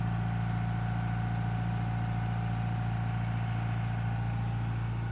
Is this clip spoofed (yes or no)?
no